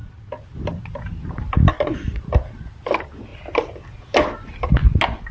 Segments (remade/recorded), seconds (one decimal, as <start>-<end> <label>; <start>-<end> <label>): 0.0-5.3 recorded